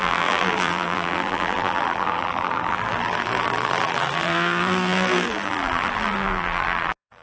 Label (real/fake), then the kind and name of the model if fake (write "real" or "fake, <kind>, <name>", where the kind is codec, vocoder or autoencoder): fake, vocoder, BigVGAN v2